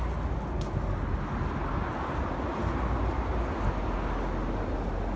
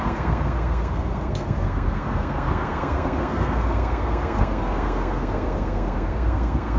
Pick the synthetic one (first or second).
second